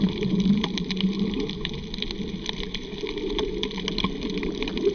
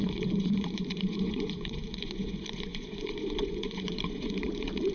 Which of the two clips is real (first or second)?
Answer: first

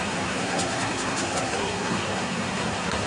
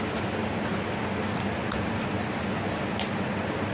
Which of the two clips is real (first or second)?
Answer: second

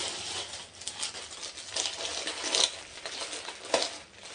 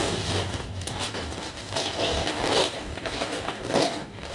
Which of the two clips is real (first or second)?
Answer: first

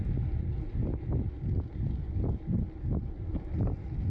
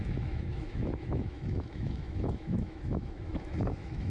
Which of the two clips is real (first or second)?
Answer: first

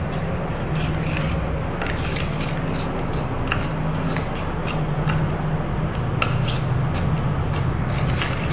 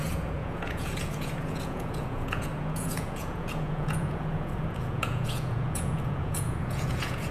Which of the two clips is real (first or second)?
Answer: first